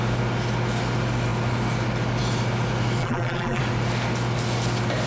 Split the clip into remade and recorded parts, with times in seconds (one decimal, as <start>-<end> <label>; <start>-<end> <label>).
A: 0.0-3.0 recorded; 3.0-3.6 remade; 3.6-5.1 recorded

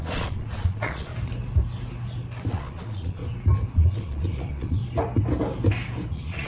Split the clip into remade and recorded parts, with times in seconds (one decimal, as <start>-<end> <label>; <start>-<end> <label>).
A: 0.0-1.1 remade; 1.1-2.5 recorded; 2.5-3.2 remade; 3.2-3.7 recorded; 3.7-4.8 remade; 4.8-6.1 recorded; 6.1-6.5 remade

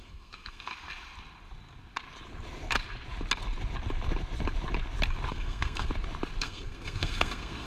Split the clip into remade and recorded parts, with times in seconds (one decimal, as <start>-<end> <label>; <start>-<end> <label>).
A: 0.0-0.7 remade; 0.7-5.3 recorded; 5.3-5.9 remade; 5.9-6.4 recorded; 6.4-7.7 remade

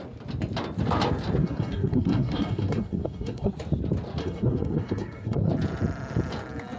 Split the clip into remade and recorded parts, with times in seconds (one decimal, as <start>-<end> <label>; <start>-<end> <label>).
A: 0.0-1.4 recorded; 1.4-3.5 remade; 3.5-4.2 recorded; 4.2-5.5 remade; 5.5-6.8 recorded

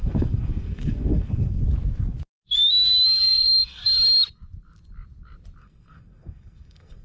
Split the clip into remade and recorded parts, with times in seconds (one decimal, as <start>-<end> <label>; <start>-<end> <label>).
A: 0.0-1.6 remade; 1.6-3.2 recorded; 3.2-3.8 remade; 3.8-5.6 recorded; 5.6-7.0 remade

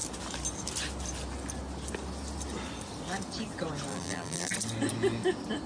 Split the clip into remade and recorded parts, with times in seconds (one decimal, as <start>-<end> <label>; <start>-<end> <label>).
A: 0.0-3.9 recorded; 3.9-4.5 remade; 4.5-5.7 recorded